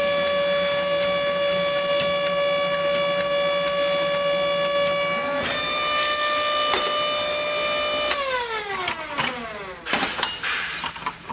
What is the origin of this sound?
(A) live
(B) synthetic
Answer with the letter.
A